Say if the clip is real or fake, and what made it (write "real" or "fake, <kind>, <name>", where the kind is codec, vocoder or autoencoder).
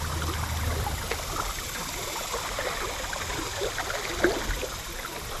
real